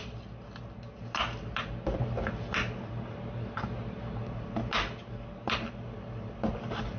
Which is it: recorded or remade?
recorded